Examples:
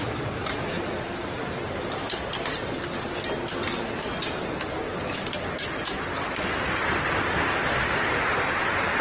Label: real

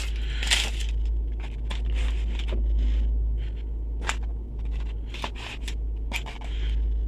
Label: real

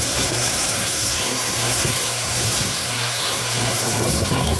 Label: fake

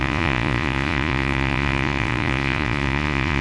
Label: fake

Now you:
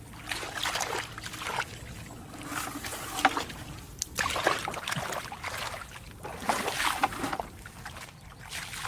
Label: real